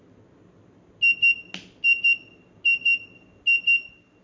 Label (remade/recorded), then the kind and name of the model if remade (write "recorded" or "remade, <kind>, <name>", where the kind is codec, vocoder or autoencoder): recorded